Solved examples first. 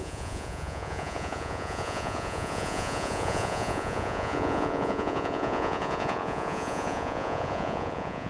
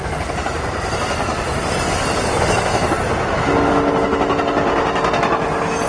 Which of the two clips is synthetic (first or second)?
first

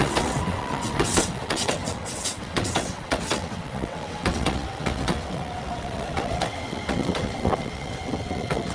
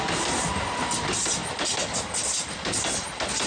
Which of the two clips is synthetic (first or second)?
first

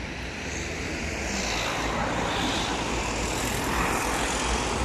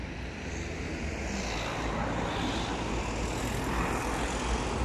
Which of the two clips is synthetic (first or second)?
first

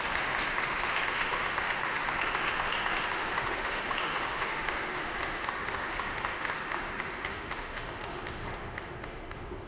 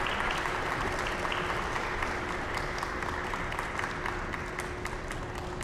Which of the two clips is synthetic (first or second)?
first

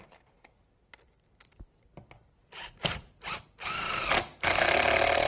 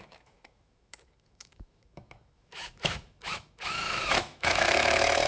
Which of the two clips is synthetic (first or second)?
second